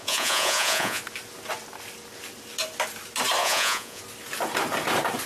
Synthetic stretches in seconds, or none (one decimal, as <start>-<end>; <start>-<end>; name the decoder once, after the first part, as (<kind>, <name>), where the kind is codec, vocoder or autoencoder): 0.0-1.0 (vocoder, Vocos); 3.4-4.0